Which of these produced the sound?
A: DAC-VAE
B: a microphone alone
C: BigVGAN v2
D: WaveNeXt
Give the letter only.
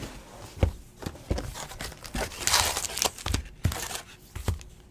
B